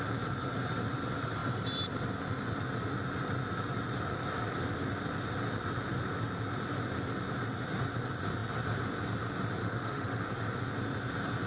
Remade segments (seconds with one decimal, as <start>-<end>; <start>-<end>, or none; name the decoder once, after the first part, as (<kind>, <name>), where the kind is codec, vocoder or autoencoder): 9.6-10.2 (autoencoder, DAC-VAE)